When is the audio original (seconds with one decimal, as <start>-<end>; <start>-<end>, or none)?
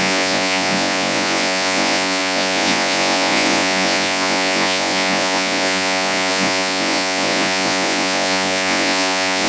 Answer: none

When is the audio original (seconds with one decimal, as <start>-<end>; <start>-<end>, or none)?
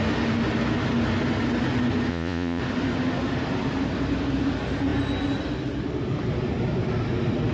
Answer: 0.0-2.1; 2.6-7.5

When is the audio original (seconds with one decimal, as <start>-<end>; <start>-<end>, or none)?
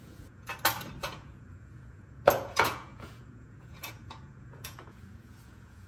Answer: 0.5-1.0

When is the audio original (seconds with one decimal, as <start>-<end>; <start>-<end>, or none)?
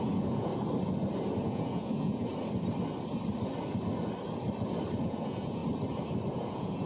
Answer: 0.5-1.4; 2.3-5.0; 5.6-6.3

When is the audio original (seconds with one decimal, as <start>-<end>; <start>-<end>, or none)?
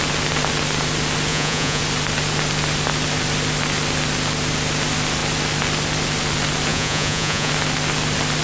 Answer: 0.0-1.3; 1.8-6.7; 7.5-8.4